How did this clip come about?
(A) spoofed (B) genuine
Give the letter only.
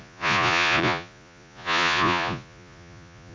A